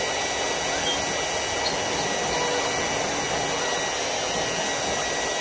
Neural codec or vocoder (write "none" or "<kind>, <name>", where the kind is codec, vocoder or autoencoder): none